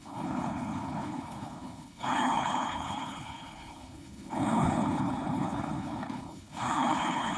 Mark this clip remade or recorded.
remade